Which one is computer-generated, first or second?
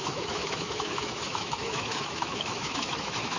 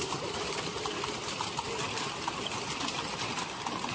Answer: first